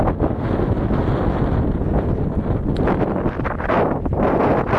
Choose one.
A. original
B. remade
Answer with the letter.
A